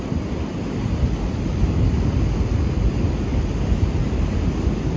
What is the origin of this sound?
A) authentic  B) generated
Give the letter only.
A